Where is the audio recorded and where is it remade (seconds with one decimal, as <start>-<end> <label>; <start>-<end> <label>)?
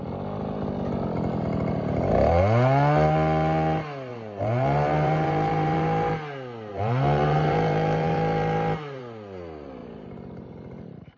0.0-4.1 recorded; 4.1-6.1 remade; 6.1-6.7 recorded; 6.7-9.0 remade; 9.0-9.8 recorded; 9.8-11.2 remade